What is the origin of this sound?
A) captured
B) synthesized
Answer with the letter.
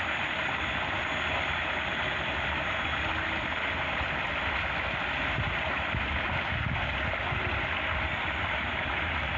A